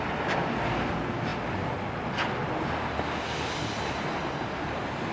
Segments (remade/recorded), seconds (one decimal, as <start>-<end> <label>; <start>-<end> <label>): 0.0-5.1 recorded